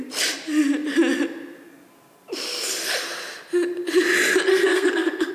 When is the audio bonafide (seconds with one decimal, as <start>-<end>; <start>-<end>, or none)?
0.0-4.5